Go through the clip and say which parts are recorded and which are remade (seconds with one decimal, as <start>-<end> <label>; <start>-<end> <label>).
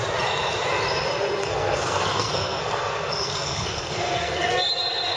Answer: 0.0-1.4 recorded; 1.4-4.5 remade; 4.5-5.2 recorded